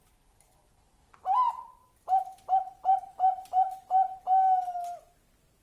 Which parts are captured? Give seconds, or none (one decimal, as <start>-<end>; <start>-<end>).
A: 0.6-2.7; 3.8-5.6